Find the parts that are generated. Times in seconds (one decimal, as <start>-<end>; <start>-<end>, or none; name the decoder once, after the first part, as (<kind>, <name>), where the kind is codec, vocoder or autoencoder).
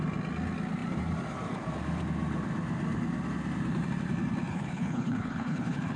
4.5-6.0 (codec, HILCodec)